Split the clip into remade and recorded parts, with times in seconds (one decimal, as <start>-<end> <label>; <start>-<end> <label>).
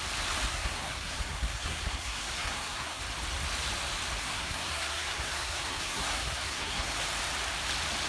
0.0-0.5 recorded; 0.5-3.0 remade; 3.0-4.2 recorded; 4.2-6.9 remade; 6.9-8.1 recorded